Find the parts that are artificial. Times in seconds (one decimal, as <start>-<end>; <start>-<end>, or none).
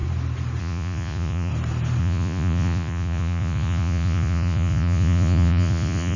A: 0.6-1.5; 2.0-6.2